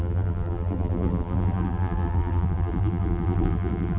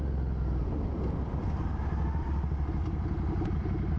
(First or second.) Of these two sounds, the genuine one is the second